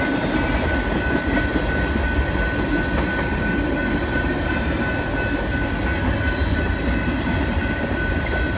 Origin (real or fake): real